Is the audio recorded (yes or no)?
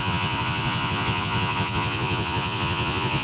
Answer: no